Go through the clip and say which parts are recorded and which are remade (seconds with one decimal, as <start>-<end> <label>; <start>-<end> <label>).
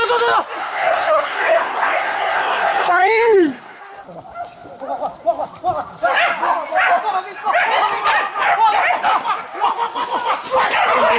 0.0-0.6 recorded; 0.6-3.8 remade; 3.8-11.2 recorded